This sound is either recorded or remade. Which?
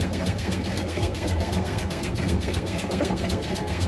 remade